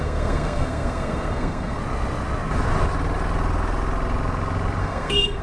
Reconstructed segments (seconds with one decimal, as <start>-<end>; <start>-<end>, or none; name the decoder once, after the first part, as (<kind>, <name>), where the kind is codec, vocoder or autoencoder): 0.0-1.8 (codec, SNAC); 4.8-5.4